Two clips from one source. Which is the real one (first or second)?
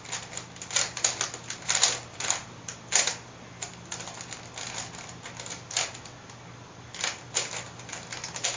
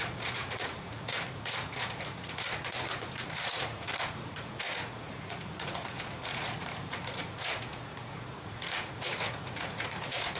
first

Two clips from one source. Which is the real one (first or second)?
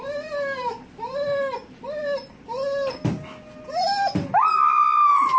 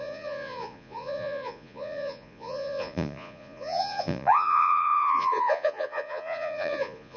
first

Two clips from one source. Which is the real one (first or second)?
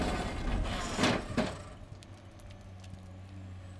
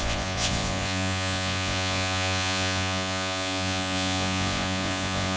first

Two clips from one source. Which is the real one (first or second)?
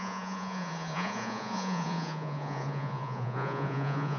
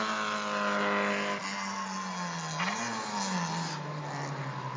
second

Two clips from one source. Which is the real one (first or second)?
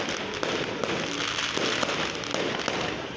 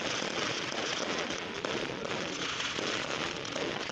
first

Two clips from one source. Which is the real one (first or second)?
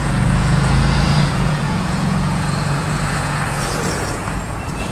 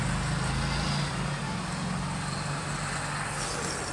second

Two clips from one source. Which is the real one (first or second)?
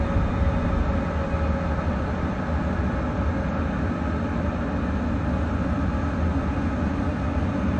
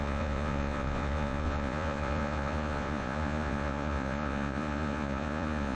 first